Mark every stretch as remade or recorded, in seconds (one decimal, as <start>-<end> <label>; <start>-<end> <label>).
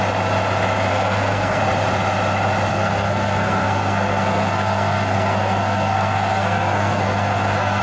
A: 0.0-0.9 recorded; 0.9-1.6 remade; 1.6-2.7 recorded; 2.7-7.8 remade